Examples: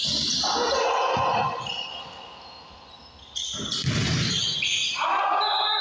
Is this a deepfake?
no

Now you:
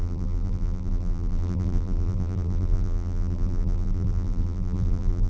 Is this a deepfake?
yes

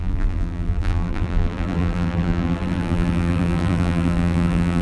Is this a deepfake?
yes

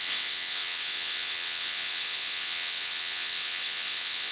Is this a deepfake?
yes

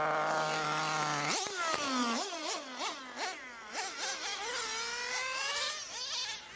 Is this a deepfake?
no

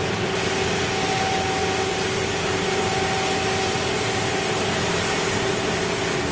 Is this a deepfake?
no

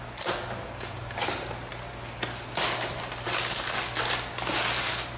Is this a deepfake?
no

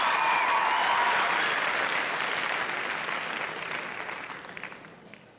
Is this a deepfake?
no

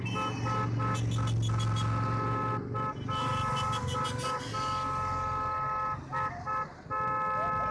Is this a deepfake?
no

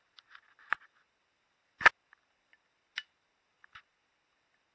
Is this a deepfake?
no